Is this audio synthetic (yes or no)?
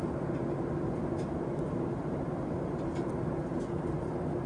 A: no